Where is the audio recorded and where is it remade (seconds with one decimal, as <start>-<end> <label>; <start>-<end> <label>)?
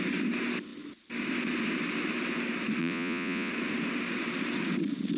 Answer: 0.0-2.8 recorded; 2.8-3.5 remade; 3.5-5.2 recorded